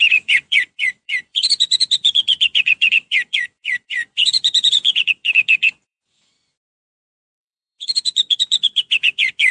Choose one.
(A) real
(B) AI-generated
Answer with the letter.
B